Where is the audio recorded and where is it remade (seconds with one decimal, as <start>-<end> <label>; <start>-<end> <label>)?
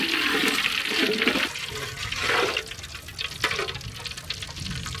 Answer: 0.0-5.0 recorded